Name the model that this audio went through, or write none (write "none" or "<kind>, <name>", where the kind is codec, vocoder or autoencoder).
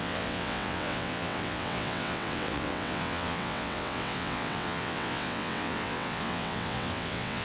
vocoder, WaveNeXt